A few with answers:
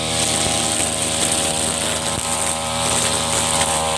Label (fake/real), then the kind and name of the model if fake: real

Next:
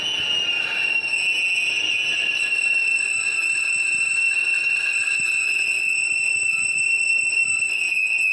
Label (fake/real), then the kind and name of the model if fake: real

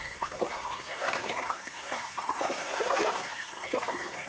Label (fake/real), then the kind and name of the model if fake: fake, codec, SNAC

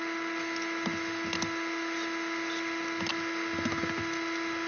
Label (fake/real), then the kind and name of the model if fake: real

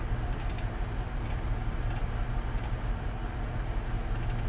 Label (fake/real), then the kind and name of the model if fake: real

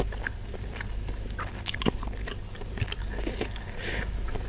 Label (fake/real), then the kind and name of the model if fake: real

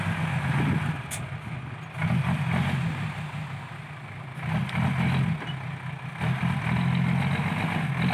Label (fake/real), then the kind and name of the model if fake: real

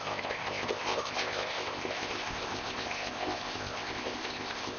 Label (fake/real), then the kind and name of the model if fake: fake, codec, ZipCodec